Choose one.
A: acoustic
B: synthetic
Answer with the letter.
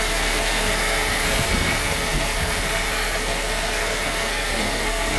B